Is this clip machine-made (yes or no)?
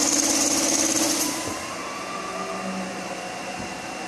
no